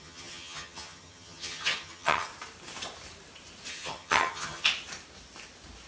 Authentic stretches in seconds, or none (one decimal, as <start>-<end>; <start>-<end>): 2.3-3.7; 4.7-5.9